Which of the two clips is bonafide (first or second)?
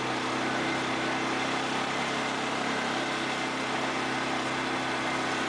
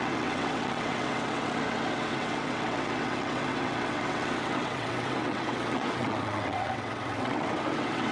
first